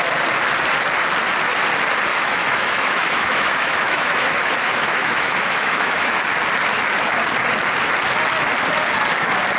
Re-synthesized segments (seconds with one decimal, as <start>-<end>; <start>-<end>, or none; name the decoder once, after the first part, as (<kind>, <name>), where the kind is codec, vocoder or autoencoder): 2.1-6.2 (autoencoder, DAC-VAE)